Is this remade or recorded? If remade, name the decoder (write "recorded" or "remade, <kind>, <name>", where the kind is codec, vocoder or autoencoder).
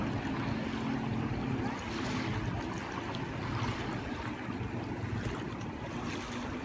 recorded